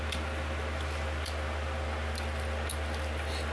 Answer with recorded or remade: recorded